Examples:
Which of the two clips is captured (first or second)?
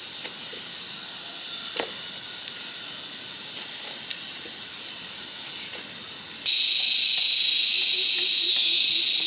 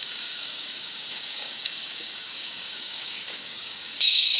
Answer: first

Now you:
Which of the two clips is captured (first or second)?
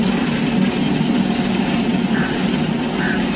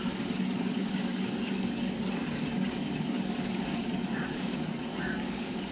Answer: first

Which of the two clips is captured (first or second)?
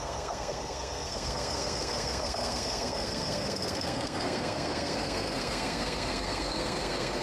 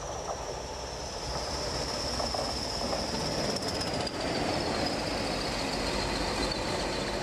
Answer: second